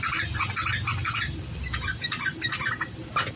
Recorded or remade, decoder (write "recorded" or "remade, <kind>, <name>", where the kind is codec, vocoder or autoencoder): recorded